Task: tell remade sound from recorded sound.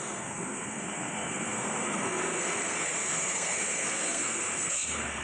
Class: remade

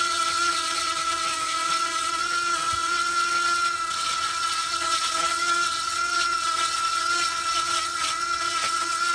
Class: remade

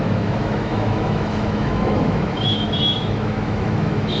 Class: remade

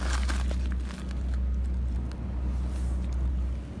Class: recorded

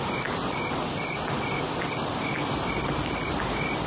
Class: recorded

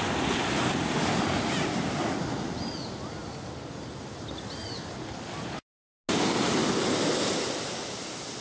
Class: recorded